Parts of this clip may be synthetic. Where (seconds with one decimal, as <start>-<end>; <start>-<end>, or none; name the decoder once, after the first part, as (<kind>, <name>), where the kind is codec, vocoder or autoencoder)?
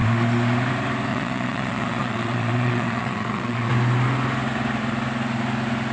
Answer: 1.1-3.7 (vocoder, WaveNeXt)